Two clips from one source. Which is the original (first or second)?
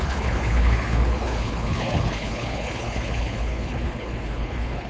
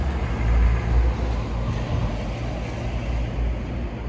second